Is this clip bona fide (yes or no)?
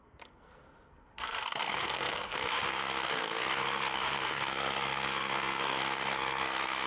no